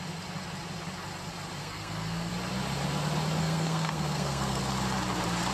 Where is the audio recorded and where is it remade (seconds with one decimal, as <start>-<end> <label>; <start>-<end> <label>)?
0.0-1.6 recorded; 1.6-2.3 remade; 2.3-3.4 recorded; 3.4-4.6 remade; 4.6-5.5 recorded